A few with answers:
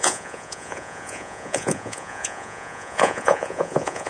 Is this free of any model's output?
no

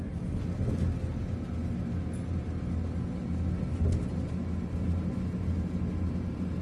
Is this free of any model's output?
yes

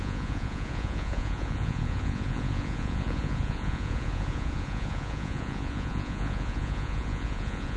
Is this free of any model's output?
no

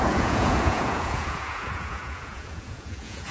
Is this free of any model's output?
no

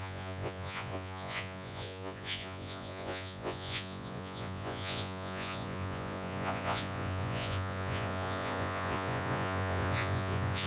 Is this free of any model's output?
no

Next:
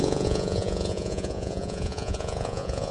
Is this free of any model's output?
no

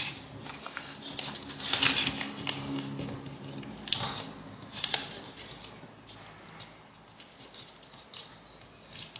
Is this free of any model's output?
yes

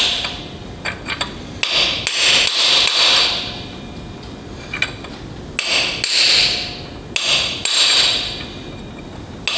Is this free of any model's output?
yes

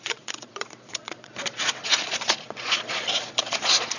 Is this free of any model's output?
no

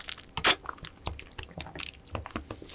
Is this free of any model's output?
yes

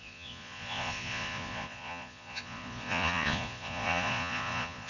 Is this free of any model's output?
no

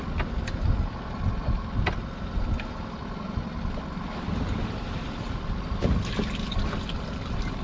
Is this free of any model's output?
yes